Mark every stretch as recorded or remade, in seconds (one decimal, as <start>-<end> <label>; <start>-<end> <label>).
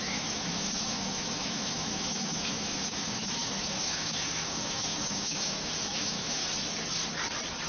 0.0-6.4 remade; 6.4-7.7 recorded